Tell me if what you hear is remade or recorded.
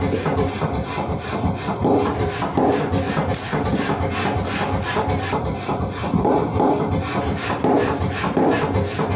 recorded